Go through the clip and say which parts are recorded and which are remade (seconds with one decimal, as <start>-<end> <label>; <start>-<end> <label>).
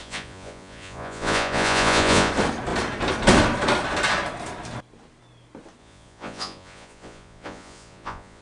0.0-2.3 remade; 2.3-5.8 recorded; 5.8-8.4 remade